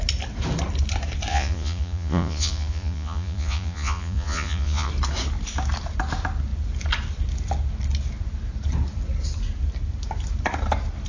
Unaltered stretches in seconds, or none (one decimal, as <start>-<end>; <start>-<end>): 0.0-1.3; 4.9-11.1